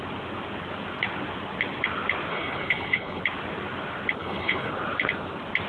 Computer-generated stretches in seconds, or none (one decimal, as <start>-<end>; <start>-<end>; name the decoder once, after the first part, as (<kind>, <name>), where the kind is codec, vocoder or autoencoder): 2.3-3.2 (codec, HILCodec); 4.2-4.7